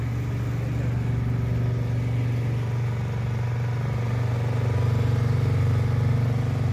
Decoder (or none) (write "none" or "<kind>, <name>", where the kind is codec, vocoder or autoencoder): none